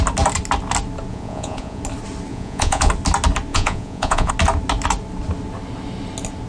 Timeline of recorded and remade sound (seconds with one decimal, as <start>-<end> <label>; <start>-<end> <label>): 0.0-1.1 recorded; 1.1-1.8 remade; 1.8-2.3 recorded; 2.3-2.9 remade; 2.9-3.5 recorded; 3.5-4.3 remade; 4.3-6.5 recorded